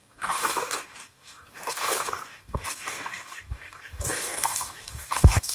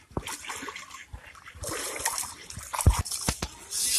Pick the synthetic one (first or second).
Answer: first